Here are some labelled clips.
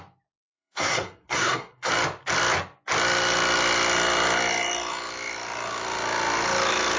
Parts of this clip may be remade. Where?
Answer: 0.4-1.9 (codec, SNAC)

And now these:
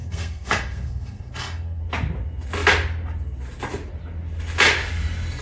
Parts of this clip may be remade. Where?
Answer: 0.0-1.8 (codec, SNAC)

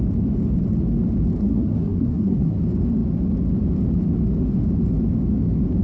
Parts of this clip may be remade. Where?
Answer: 1.4-2.6 (codec, SNAC)

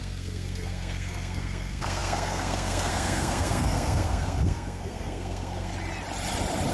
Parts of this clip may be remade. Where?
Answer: 0.0-5.7 (codec, SNAC)

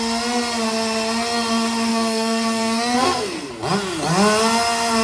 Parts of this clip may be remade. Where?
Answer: 1.9-3.5 (codec, SNAC)